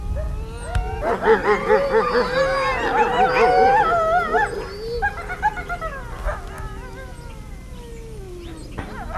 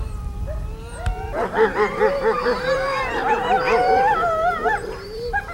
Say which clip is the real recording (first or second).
first